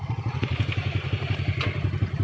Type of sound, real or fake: real